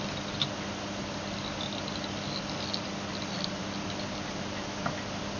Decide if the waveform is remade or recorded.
recorded